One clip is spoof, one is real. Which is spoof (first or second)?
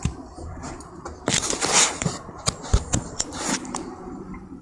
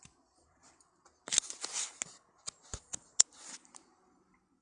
first